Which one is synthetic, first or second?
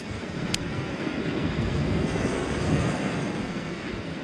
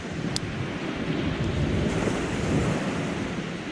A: first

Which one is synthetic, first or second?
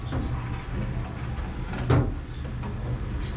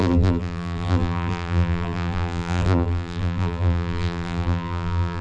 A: second